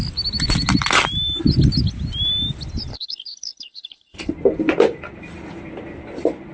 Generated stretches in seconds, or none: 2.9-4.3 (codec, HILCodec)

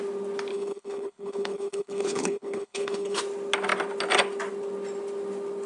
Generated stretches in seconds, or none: 0.5-3.2 (codec, HILCodec)

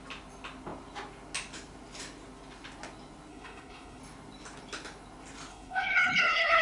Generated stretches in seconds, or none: 3.3-4.0 (codec, HILCodec); 5.5-6.6

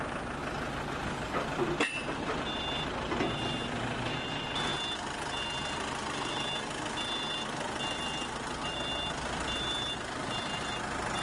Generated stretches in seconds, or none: none

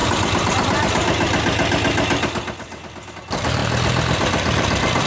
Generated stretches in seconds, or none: 3.1-5.1 (vocoder, BigVGAN v2)

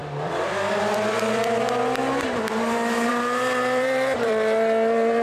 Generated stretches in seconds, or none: 0.0-5.2 (vocoder, BigVGAN v2)